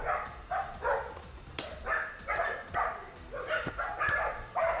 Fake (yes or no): yes